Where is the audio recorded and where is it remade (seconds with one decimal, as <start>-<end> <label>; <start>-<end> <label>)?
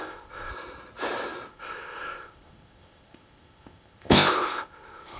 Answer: 0.0-0.5 remade; 0.5-1.5 recorded; 1.5-5.2 remade